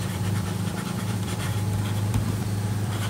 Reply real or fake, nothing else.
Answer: fake